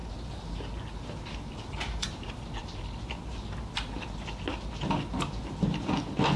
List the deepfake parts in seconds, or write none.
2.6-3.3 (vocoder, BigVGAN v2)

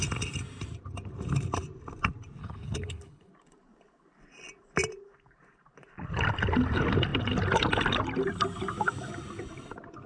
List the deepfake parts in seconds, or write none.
2.4-3.3 (codec, HILCodec)